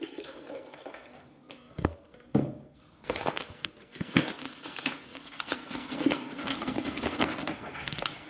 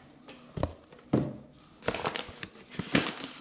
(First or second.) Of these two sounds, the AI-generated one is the first